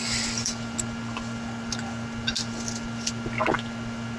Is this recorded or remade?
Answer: recorded